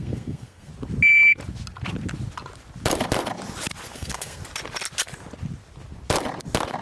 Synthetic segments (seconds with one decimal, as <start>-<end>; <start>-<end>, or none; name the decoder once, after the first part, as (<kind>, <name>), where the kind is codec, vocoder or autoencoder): 0.0-0.7 (codec, SNAC); 3.9-4.4